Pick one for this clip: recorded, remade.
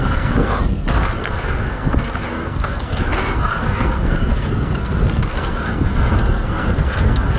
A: remade